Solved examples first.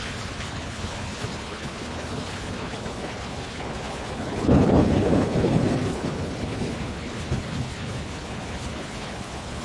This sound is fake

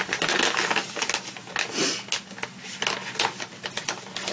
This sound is real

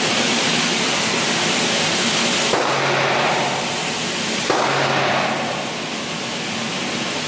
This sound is real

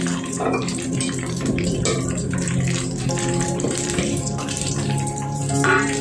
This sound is fake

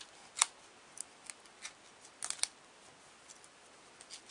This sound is real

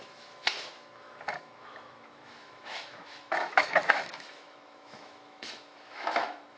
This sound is fake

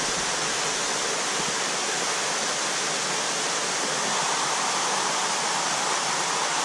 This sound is real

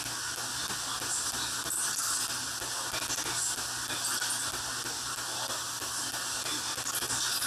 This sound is real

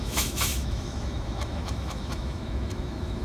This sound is fake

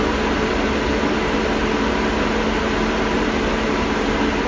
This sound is real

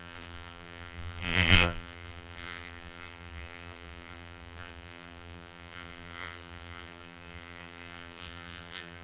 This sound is fake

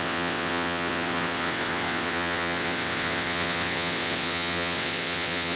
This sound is fake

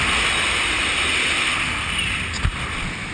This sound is real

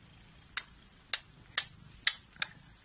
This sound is real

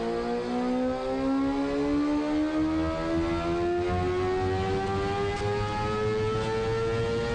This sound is real